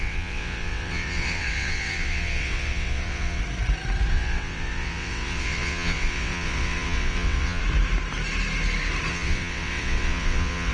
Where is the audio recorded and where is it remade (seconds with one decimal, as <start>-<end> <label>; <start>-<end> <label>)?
0.0-3.4 remade; 3.4-4.1 recorded; 4.1-7.6 remade; 7.6-9.1 recorded; 9.1-10.7 remade